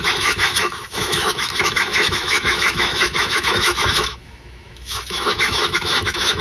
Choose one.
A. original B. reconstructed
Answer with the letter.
B